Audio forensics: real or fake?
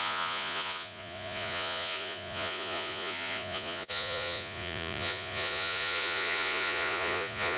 fake